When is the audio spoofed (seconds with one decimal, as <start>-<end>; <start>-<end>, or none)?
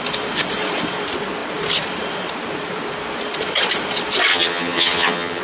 4.3-5.4